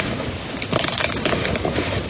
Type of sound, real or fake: real